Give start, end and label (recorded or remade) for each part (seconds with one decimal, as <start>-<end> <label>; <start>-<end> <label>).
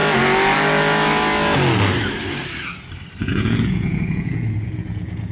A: 0.0-3.2 recorded; 3.2-5.3 remade